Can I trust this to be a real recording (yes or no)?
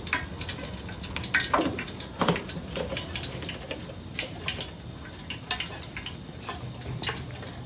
yes